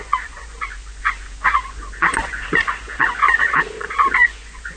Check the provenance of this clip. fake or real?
fake